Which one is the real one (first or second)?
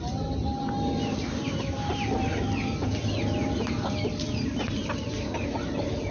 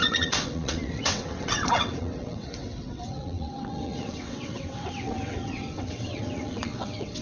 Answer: first